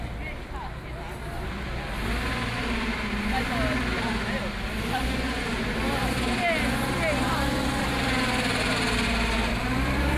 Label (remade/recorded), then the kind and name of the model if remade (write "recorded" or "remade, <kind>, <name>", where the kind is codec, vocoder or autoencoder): recorded